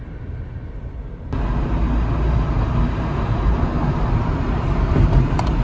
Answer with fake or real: real